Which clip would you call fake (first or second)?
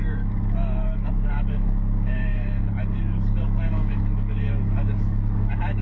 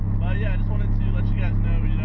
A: first